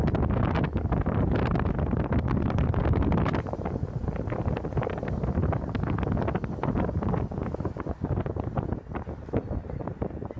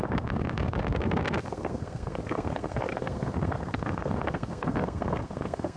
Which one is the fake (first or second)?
second